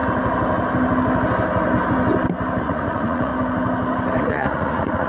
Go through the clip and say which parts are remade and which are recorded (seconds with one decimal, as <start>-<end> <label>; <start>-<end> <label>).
0.0-2.6 recorded; 2.6-3.3 remade; 3.3-4.2 recorded; 4.2-5.1 remade